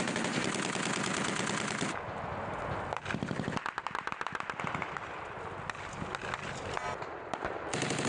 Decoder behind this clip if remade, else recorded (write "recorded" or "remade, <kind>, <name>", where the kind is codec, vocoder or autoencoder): recorded